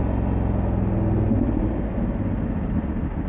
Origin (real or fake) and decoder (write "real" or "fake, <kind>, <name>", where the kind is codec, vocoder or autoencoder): real